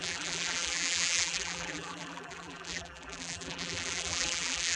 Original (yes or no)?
no